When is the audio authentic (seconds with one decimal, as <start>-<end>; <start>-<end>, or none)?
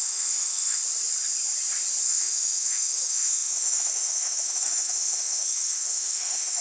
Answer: 0.8-2.0